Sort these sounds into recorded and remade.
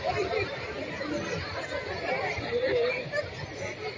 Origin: recorded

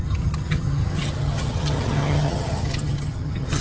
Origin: remade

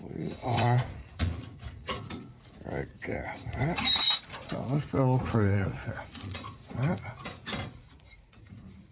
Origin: remade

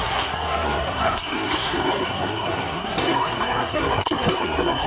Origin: remade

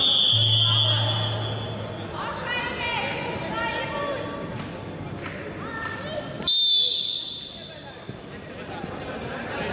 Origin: recorded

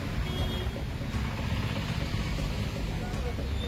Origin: recorded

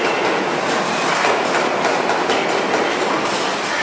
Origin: recorded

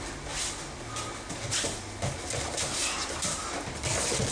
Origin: recorded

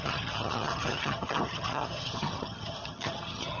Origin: remade